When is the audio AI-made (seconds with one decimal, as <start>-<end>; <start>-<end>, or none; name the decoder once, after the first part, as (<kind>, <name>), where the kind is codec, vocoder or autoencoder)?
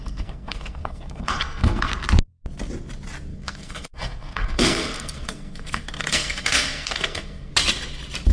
0.0-1.9 (codec, SNAC); 3.3-7.5